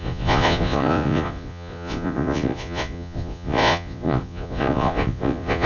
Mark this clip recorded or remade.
remade